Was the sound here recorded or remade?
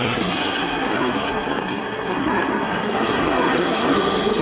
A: remade